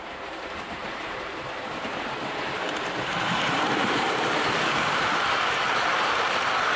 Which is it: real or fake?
fake